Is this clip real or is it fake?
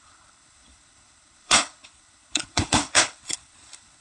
fake